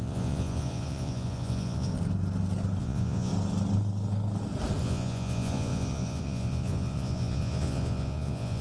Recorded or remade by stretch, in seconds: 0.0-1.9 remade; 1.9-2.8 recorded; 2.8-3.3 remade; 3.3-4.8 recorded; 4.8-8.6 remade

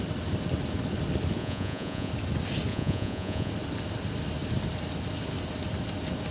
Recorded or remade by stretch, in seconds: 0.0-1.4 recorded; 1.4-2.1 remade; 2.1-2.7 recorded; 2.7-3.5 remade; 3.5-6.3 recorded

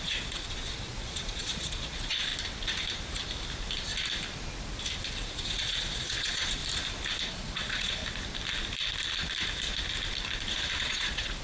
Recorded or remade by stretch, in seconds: 0.0-2.3 remade; 2.3-5.1 recorded; 5.1-6.6 remade; 6.6-7.2 recorded; 7.2-8.0 remade; 8.0-10.8 recorded; 10.8-11.4 remade

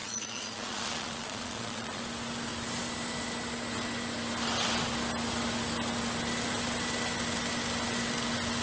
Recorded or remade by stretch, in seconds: 0.0-2.0 remade; 2.0-8.6 recorded

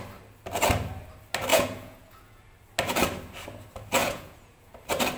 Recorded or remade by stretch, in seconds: 0.0-1.5 recorded; 1.5-2.4 remade; 2.4-4.0 recorded; 4.0-4.7 remade; 4.7-5.2 recorded

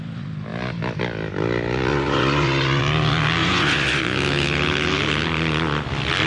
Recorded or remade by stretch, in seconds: 0.0-1.9 recorded; 1.9-2.8 remade; 2.8-3.4 recorded; 3.4-4.0 remade; 4.0-6.3 recorded

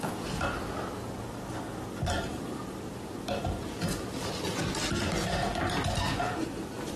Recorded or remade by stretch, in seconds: 0.0-7.0 recorded

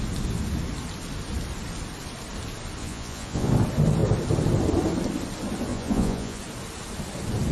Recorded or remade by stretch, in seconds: 0.0-2.8 recorded; 2.8-3.5 remade; 3.5-5.7 recorded; 5.7-6.4 remade; 6.4-7.5 recorded